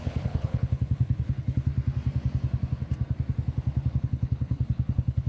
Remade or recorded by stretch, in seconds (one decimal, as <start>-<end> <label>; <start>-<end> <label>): 0.0-1.7 remade; 1.7-4.0 recorded; 4.0-5.3 remade